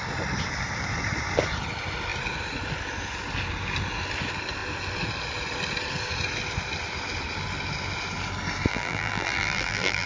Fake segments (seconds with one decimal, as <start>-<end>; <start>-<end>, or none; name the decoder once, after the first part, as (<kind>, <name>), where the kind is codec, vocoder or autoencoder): 8.7-10.1 (vocoder, BigVGAN v2)